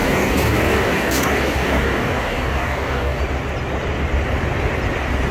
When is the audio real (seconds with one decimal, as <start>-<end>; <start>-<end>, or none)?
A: 3.2-5.3